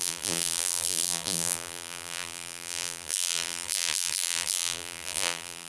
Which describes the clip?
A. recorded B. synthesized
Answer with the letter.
B